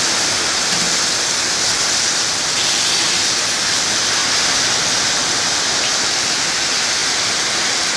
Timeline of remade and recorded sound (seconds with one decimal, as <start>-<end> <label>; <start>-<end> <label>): 0.0-8.0 recorded